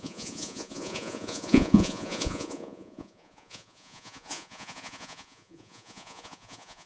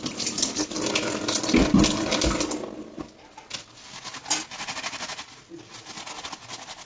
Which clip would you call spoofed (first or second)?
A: first